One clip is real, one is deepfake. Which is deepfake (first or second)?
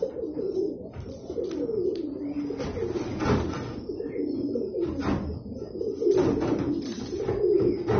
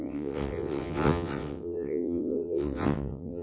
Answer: second